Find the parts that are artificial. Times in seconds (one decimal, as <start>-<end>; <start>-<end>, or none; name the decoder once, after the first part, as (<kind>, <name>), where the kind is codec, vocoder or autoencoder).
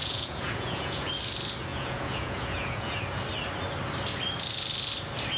0.0-1.1 (vocoder, Vocos); 1.7-3.0